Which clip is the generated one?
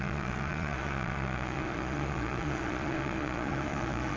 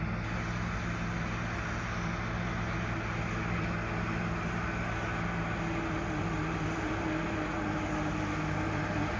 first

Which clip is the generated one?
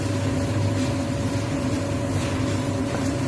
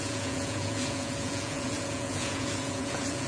second